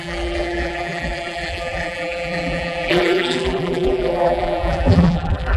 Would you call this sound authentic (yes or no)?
no